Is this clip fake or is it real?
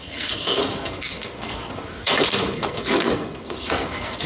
fake